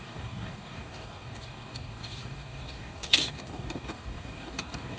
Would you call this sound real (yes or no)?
no